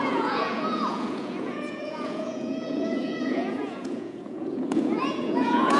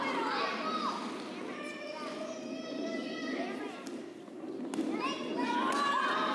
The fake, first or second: first